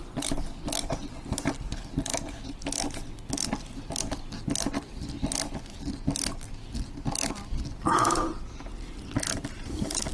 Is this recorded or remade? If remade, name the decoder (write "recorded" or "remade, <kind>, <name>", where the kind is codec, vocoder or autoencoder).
recorded